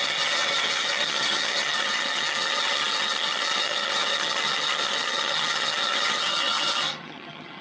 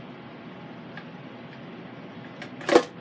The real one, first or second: second